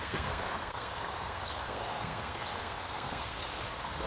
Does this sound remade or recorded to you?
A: remade